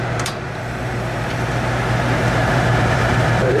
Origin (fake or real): fake